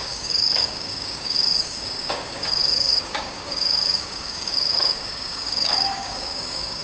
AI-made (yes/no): yes